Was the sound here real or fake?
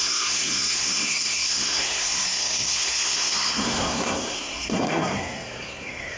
fake